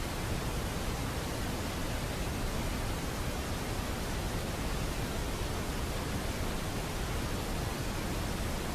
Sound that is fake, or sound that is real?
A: real